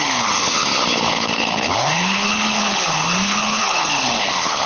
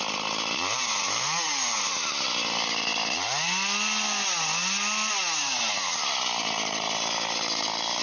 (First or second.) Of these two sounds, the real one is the second